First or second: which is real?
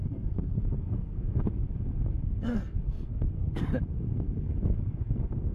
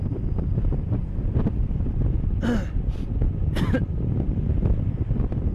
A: second